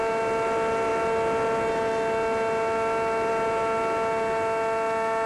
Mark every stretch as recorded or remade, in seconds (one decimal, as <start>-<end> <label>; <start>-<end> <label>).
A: 0.0-5.3 recorded